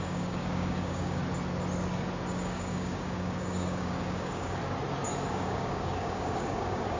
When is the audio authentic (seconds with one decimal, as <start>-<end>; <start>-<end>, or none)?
1.2-2.3; 4.6-5.3